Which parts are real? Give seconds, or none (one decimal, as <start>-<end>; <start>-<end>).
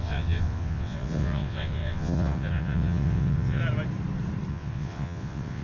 3.6-4.5